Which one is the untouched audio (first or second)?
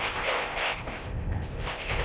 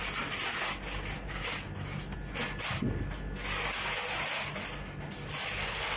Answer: second